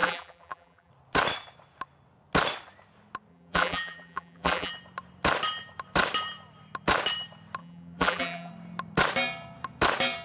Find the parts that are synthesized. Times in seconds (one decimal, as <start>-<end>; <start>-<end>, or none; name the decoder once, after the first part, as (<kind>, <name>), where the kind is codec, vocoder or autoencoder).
0.0-0.9 (vocoder, BigVGAN v2); 3.3-4.7; 7.6-8.5